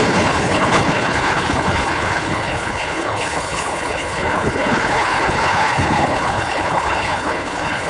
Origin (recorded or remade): remade